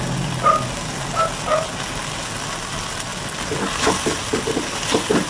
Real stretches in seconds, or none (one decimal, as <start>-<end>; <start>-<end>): 0.0-5.3